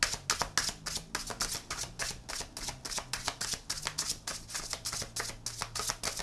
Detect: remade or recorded recorded